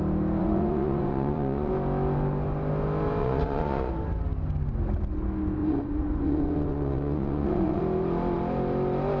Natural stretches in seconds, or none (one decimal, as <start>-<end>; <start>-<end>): 0.0-0.4; 1.7-3.2; 3.9-5.6; 7.8-9.2